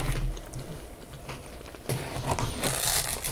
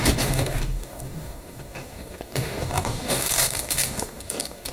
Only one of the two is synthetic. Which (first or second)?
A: second